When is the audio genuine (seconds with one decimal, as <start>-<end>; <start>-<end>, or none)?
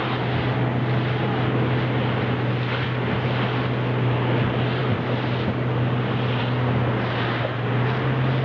0.0-4.8; 6.4-8.4